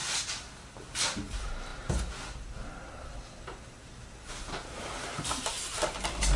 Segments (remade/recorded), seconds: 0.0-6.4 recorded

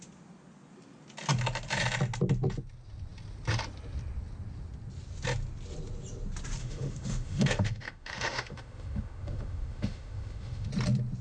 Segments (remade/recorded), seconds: 0.0-6.6 recorded; 6.6-10.7 remade; 10.7-11.2 recorded

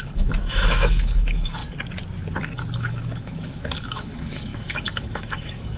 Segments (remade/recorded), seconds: 0.0-1.6 remade; 1.6-2.8 recorded; 2.8-5.8 remade